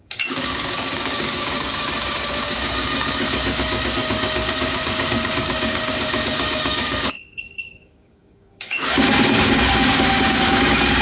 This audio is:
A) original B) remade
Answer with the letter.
B